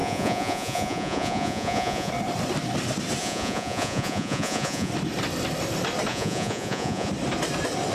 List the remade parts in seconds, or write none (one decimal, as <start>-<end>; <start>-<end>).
0.0-2.1; 3.2-4.9; 6.1-7.1